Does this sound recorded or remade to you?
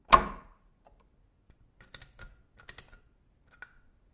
recorded